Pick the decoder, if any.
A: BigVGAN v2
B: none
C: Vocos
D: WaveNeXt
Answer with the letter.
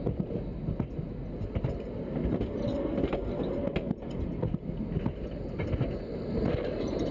B